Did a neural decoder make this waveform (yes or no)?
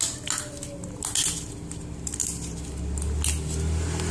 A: no